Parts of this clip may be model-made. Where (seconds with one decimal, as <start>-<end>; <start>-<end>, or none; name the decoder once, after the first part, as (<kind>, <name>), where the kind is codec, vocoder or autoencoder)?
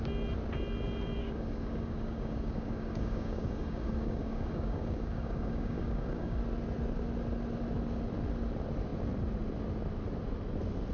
1.2-6.4 (codec, DAC)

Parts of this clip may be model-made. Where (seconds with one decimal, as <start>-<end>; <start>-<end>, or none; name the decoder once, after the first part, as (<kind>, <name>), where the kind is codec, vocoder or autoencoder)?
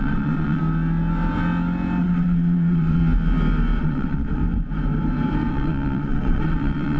0.0-0.6 (vocoder, WaveNeXt); 2.0-3.0; 3.8-4.4; 5.5-7.0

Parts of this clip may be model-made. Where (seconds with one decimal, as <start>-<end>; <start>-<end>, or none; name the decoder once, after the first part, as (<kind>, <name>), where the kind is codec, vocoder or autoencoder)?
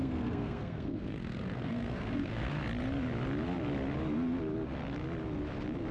0.0-2.5 (codec, SNAC)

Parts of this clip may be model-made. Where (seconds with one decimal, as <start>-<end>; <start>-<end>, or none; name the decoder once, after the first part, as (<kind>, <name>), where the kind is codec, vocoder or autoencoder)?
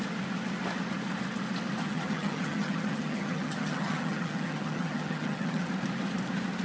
1.8-5.7 (vocoder, HiFi-GAN)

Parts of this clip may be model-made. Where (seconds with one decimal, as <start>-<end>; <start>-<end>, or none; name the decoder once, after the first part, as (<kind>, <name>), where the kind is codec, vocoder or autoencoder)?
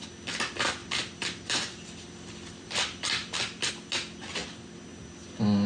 0.8-3.7 (vocoder, BigVGAN v2)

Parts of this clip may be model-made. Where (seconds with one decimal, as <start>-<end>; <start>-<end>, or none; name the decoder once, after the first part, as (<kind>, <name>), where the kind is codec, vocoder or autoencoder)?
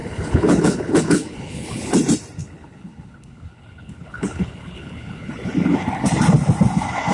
0.0-1.9 (codec, HILCodec); 2.4-5.3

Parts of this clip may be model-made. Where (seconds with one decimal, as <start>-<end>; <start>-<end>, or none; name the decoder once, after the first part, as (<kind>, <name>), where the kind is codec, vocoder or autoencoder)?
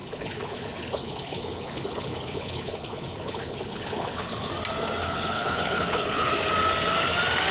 0.0-4.5 (codec, HILCodec); 5.0-6.3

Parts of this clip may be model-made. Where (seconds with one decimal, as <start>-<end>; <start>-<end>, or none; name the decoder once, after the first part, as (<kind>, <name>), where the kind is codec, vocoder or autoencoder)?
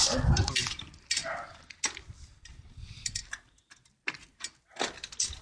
none